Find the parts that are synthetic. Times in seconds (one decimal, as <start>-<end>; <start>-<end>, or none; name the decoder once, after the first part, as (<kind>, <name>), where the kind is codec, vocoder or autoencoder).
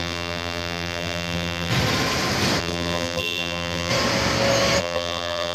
0.0-1.7 (vocoder, BigVGAN v2); 2.6-3.9; 4.8-5.5